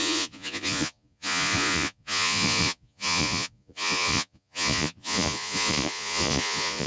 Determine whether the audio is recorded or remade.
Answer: remade